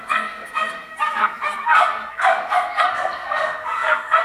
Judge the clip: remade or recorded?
remade